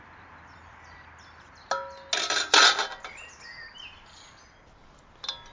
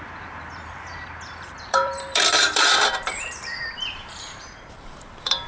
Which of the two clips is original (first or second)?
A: first